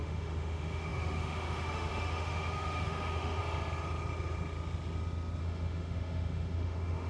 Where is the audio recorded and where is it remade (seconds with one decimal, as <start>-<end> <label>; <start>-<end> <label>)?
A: 0.0-3.4 remade; 3.4-5.4 recorded; 5.4-7.1 remade